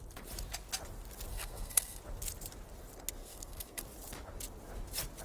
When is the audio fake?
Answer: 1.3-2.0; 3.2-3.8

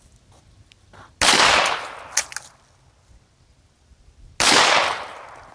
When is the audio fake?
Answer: none

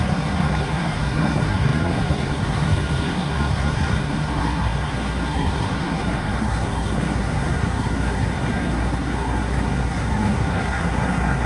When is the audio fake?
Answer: 0.0-11.5

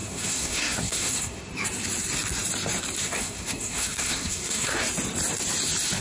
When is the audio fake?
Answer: 0.0-1.4; 3.0-4.8